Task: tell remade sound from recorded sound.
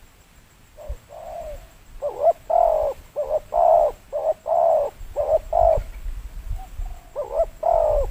recorded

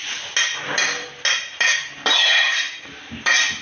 recorded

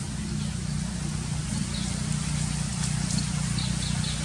recorded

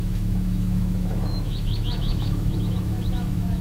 remade